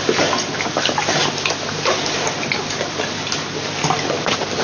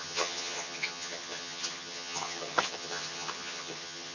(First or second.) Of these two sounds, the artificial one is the second